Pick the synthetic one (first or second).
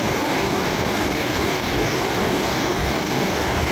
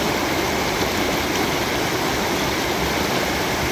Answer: first